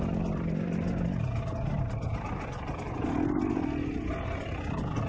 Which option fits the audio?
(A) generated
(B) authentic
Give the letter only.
B